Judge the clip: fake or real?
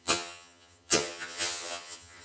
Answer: fake